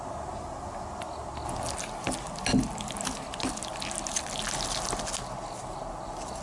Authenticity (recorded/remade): recorded